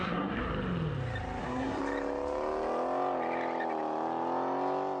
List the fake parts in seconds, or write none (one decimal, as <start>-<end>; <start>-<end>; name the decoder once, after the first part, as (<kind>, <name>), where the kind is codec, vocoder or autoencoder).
0.0-0.5 (codec, SNAC); 1.4-1.8